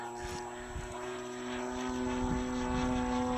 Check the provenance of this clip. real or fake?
real